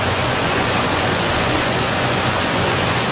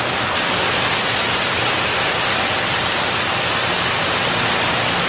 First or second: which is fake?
first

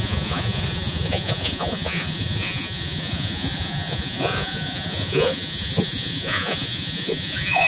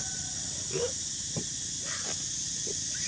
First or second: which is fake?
first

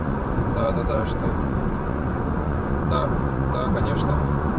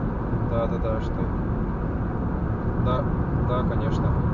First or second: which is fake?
first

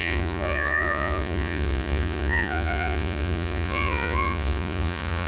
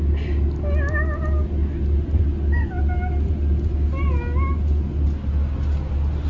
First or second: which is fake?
first